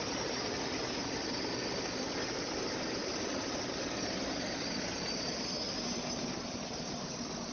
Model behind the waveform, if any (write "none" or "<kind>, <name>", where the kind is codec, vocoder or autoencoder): none